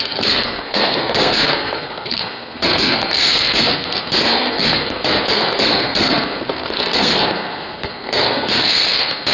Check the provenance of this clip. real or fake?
fake